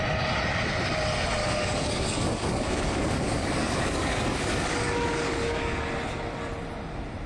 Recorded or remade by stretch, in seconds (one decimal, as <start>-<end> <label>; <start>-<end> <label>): 0.0-1.4 recorded; 1.4-5.8 remade; 5.8-7.3 recorded